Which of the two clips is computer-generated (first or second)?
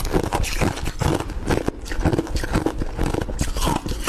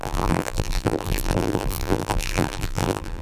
second